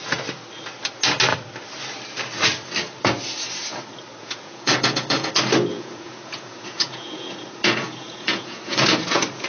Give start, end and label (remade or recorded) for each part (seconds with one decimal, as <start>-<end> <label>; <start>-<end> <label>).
0.0-4.2 recorded; 4.2-5.3 remade; 5.3-5.7 recorded; 5.7-9.5 remade